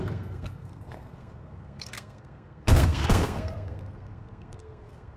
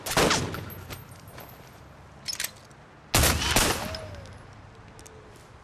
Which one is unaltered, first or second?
second